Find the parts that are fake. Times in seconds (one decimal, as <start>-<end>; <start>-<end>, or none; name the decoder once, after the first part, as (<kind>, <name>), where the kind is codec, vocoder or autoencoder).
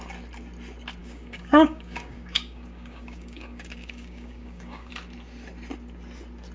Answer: 1.0-4.9 (codec, DAC)